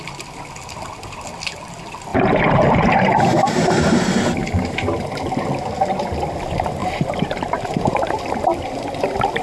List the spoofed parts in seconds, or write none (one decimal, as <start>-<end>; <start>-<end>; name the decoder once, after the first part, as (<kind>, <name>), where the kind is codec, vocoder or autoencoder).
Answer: 2.1-5.7 (vocoder, BigVGAN v2); 6.8-8.1

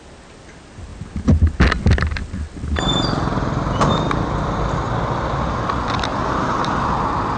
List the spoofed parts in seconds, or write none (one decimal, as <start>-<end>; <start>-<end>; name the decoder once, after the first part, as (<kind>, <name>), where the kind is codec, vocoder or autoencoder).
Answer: 6.1-7.0 (vocoder, BigVGAN v2)

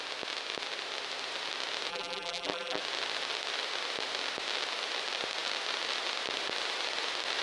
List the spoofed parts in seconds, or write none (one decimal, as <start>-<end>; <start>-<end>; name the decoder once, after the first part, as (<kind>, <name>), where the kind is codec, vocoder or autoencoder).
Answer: 1.9-2.8 (vocoder, BigVGAN v2)

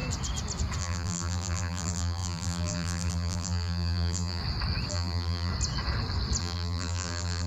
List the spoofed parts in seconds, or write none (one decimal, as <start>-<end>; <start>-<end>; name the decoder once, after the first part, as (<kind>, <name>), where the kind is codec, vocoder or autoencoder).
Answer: 0.8-4.4 (vocoder, BigVGAN v2); 4.9-5.5; 6.4-7.5

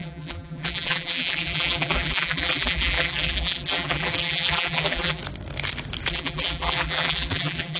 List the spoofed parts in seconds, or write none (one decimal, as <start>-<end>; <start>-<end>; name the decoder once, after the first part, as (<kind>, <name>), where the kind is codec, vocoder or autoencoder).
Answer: 0.0-5.2 (vocoder, BigVGAN v2); 6.1-7.8